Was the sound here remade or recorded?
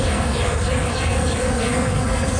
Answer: remade